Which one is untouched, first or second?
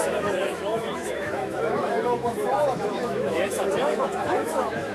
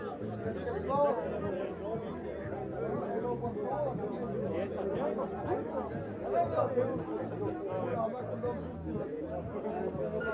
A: second